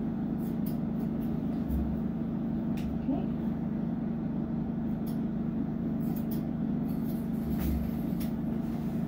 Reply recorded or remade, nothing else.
recorded